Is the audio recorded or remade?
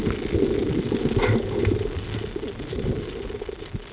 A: recorded